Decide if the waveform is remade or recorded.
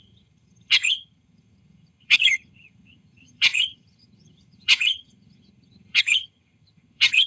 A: remade